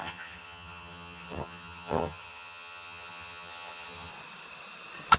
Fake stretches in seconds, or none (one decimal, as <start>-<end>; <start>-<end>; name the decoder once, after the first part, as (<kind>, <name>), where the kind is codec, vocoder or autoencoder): 0.0-4.1 (vocoder, HiFi-GAN)